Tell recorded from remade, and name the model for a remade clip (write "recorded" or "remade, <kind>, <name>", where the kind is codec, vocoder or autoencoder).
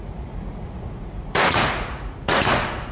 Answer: remade, vocoder, Vocos